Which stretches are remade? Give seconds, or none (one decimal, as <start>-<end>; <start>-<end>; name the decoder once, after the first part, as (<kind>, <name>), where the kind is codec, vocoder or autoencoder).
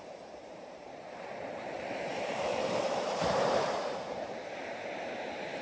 0.0-5.6 (vocoder, BigVGAN v2)